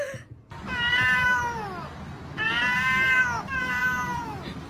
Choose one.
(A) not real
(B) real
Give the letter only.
B